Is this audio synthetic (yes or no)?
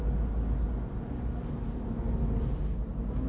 no